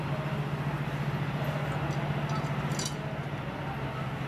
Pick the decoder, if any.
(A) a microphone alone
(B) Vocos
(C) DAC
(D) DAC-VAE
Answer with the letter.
A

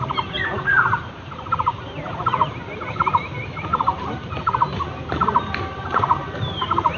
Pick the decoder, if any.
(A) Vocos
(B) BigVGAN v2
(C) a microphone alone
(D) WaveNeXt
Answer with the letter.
B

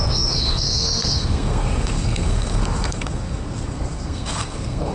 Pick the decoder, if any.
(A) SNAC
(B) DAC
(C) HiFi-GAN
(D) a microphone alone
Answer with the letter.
A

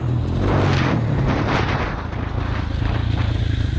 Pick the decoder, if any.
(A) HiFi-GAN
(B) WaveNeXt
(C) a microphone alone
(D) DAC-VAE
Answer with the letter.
C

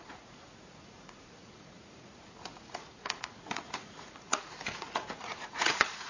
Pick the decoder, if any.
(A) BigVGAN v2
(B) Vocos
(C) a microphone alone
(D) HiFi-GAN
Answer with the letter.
B